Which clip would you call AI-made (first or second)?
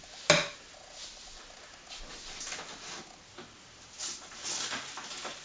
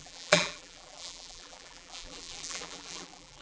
second